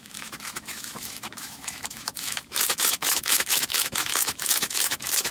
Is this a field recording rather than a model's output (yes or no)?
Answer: no